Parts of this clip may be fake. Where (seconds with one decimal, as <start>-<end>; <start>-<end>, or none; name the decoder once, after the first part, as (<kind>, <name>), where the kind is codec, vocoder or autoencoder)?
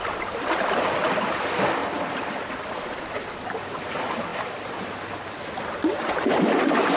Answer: 0.0-4.3 (vocoder, BigVGAN v2); 5.6-7.0